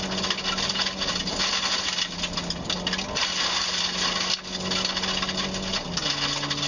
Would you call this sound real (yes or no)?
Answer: yes